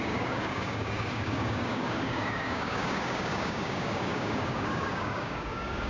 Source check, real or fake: fake